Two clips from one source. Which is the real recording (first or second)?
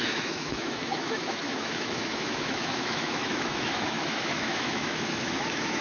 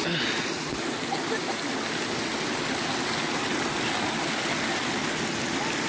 second